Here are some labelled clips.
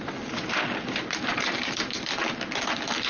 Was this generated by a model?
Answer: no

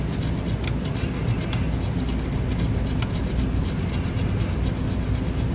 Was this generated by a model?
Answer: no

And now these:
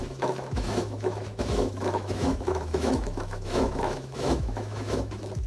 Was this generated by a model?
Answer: yes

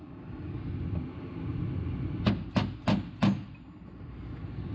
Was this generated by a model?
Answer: no